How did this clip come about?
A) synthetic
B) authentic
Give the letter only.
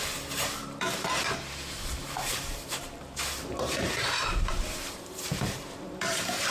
A